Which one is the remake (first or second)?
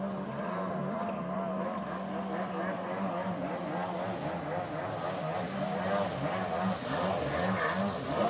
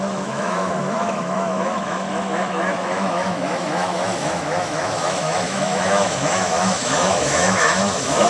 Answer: second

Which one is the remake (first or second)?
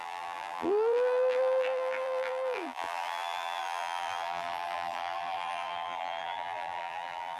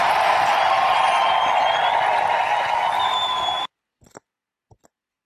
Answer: first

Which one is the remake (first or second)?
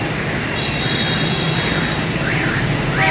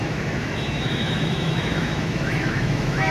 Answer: second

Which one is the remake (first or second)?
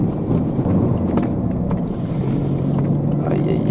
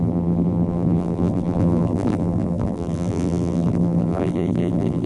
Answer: second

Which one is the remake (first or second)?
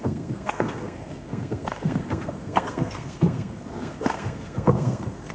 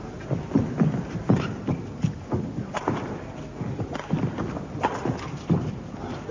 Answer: first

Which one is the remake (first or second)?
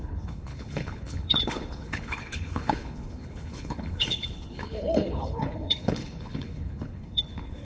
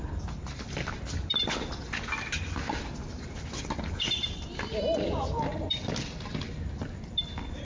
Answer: first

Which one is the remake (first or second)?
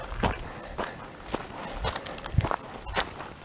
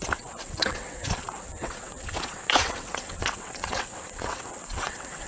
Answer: second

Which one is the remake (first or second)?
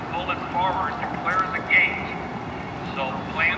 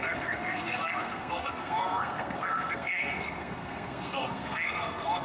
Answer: second